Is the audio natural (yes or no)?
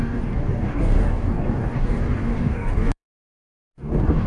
no